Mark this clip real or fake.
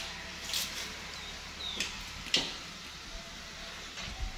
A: real